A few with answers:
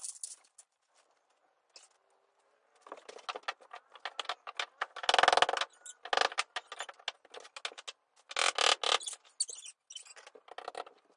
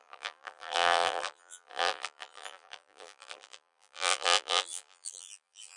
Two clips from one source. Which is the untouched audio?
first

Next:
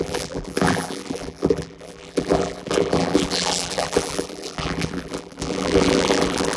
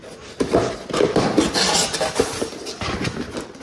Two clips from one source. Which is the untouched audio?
second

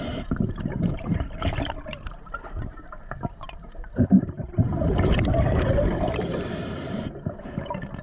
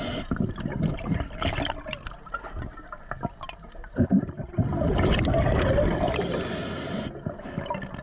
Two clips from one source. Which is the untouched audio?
second